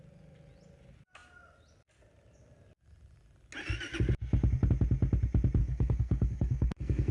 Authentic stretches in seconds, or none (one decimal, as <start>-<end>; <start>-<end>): 0.0-5.6

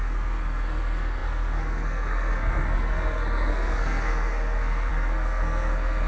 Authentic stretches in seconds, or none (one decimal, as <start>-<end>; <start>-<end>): none

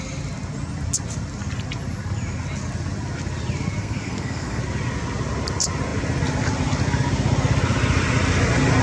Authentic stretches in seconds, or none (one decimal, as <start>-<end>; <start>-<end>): 0.0-3.8; 4.6-8.8

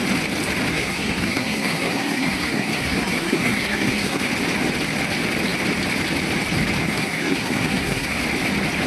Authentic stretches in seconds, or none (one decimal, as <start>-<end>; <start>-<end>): 0.0-0.7; 4.3-6.8; 8.2-8.9

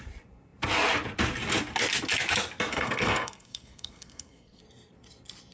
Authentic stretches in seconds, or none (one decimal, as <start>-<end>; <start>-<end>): 0.0-2.7; 4.6-5.5

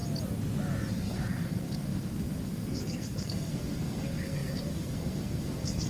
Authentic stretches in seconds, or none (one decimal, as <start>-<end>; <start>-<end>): 0.0-0.9